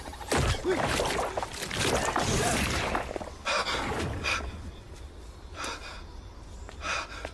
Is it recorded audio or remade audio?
recorded